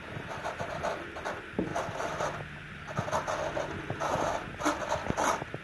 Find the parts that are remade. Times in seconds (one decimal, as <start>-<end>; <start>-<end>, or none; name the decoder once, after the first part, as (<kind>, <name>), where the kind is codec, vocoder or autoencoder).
none